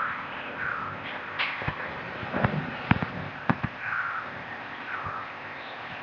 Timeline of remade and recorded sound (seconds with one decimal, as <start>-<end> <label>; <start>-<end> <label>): 0.0-1.9 remade; 1.9-3.1 recorded; 3.1-6.0 remade